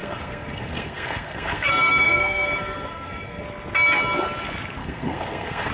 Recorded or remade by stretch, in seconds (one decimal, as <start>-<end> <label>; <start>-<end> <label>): 0.0-3.4 remade; 3.4-4.8 recorded; 4.8-5.7 remade